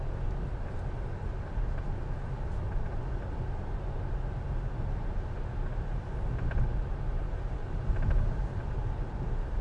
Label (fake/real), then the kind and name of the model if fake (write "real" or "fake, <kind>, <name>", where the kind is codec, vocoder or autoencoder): real